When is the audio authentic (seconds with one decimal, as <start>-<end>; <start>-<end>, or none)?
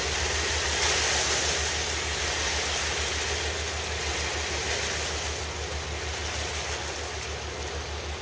0.0-8.2